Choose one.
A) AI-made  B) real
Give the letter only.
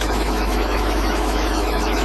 A